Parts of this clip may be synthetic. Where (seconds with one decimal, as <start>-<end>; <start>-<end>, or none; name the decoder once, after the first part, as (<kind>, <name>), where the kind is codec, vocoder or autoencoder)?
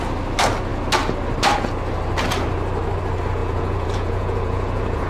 3.4-5.1 (vocoder, Vocos)